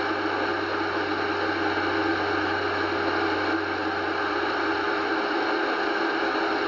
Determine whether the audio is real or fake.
real